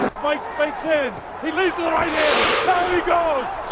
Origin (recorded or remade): remade